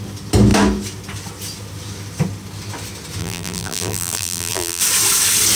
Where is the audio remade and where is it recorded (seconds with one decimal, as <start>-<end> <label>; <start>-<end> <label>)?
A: 0.0-3.2 recorded; 3.2-4.8 remade; 4.8-5.6 recorded